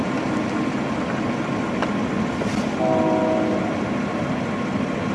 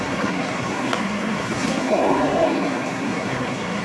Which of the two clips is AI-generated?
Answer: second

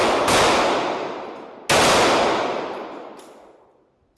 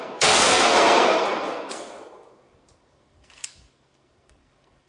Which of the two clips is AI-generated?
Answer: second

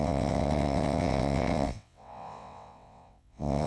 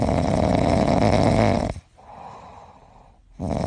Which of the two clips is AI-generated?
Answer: first